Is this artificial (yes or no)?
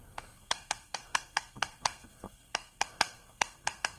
yes